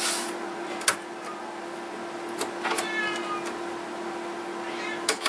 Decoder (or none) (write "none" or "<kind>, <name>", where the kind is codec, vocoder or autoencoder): none